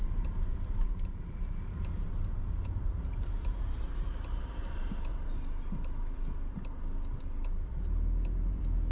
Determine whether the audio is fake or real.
fake